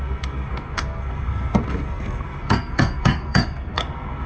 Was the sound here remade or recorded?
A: remade